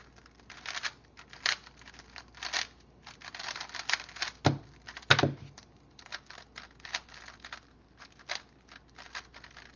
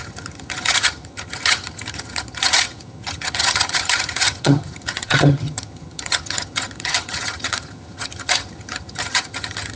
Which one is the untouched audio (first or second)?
first